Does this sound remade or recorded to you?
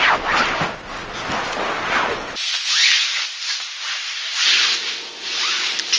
recorded